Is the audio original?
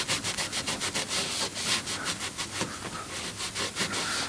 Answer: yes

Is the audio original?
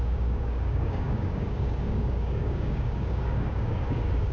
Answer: no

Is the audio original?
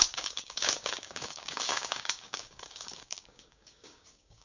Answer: no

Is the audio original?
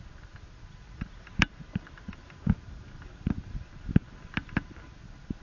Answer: yes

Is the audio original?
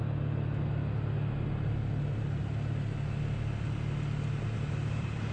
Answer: yes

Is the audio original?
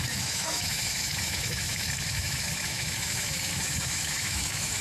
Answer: no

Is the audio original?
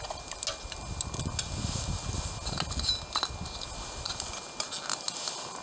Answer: yes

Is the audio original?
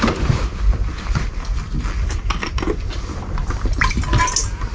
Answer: yes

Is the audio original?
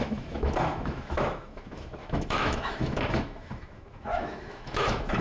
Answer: no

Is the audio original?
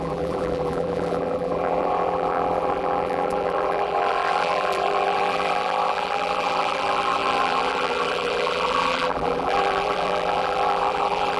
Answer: no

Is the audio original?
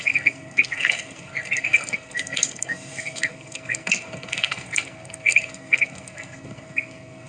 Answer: no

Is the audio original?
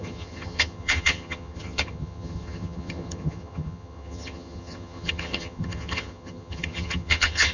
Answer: no